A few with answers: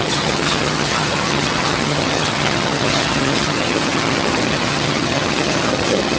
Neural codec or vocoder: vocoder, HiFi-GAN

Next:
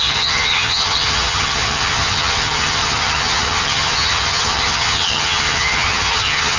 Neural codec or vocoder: vocoder, HiFi-GAN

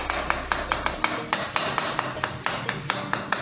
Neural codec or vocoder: none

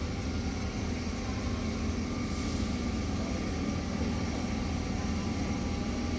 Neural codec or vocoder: none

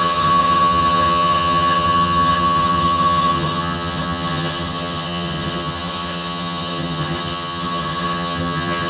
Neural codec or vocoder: vocoder, HiFi-GAN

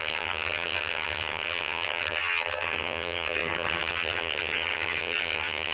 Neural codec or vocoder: vocoder, HiFi-GAN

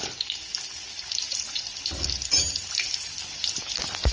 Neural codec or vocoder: none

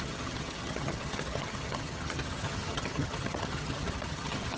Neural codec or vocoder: vocoder, HiFi-GAN